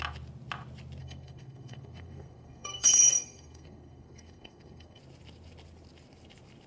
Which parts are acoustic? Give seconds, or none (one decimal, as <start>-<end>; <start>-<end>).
0.0-1.0; 5.0-6.7